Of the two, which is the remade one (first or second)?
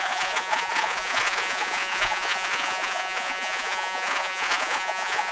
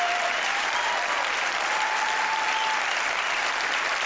first